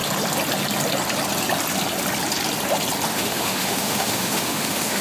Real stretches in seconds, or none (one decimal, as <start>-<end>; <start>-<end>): 0.0-3.1